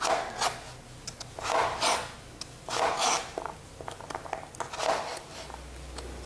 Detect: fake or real real